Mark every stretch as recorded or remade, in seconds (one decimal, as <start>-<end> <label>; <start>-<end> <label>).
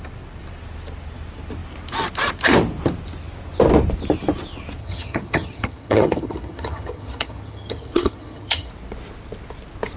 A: 0.0-4.8 recorded; 4.8-8.7 remade; 8.7-10.0 recorded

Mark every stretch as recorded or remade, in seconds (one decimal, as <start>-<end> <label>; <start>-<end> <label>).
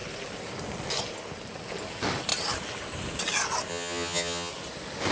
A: 0.0-3.7 recorded; 3.7-4.5 remade; 4.5-5.1 recorded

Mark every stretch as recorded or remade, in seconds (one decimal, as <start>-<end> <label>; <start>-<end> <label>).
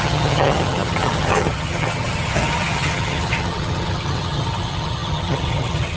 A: 0.0-6.0 remade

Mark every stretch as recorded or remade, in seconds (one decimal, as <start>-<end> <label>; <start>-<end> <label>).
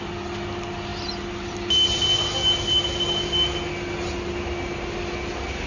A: 0.0-5.7 recorded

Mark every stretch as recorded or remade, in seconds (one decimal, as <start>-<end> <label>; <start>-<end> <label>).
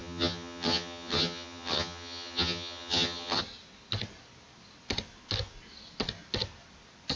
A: 0.0-3.4 remade; 3.4-7.2 recorded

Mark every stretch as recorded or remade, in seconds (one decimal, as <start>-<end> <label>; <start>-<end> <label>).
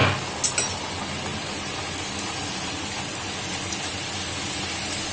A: 0.0-5.1 recorded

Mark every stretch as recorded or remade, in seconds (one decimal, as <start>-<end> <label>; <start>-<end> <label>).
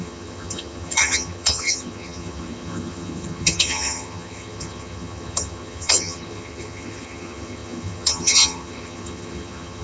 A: 0.0-9.8 remade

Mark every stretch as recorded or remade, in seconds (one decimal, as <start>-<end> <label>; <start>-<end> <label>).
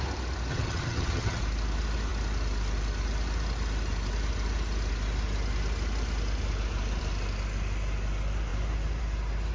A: 0.0-0.5 recorded; 0.5-1.4 remade; 1.4-9.5 recorded